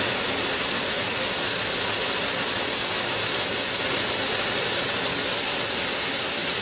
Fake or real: real